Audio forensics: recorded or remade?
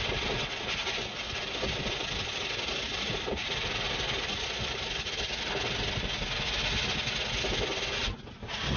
recorded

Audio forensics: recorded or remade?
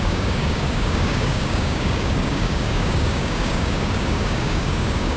remade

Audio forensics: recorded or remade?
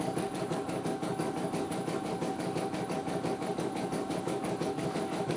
remade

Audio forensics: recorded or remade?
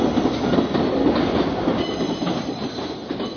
recorded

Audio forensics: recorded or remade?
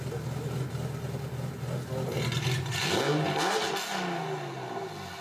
recorded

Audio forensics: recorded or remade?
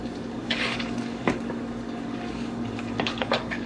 remade